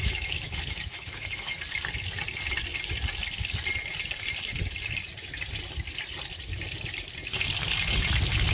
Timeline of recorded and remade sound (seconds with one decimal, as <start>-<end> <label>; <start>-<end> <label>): 0.0-1.6 remade; 1.6-8.5 recorded